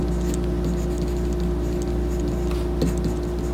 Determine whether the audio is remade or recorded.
recorded